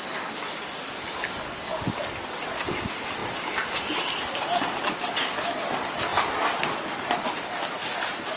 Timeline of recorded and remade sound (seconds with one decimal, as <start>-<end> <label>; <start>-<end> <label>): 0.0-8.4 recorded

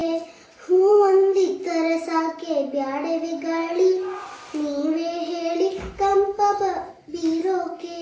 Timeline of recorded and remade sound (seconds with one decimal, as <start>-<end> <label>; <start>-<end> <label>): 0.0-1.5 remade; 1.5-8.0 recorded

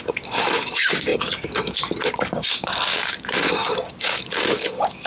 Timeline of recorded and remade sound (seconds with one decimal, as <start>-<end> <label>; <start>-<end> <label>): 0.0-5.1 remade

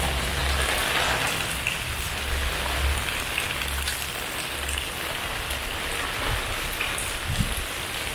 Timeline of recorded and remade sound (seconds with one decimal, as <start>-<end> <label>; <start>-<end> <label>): 0.0-8.1 recorded

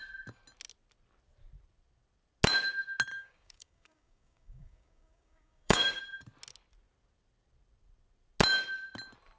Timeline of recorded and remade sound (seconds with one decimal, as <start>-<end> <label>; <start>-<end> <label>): 0.0-3.1 recorded; 3.1-6.0 remade; 6.0-9.4 recorded

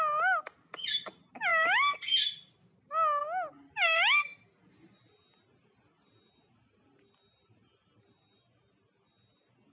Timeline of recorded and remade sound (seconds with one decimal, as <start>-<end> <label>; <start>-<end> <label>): 0.0-9.7 recorded

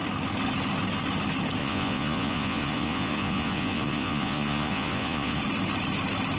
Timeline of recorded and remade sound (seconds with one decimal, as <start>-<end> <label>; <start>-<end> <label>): 0.0-1.6 recorded; 1.6-5.4 remade; 5.4-6.4 recorded

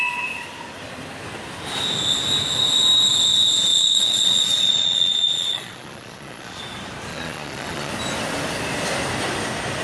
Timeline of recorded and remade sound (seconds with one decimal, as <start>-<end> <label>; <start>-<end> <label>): 0.0-3.7 recorded; 3.7-6.6 remade; 6.6-7.1 recorded; 7.1-7.9 remade; 7.9-9.8 recorded